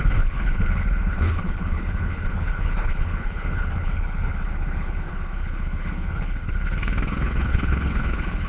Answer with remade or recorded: remade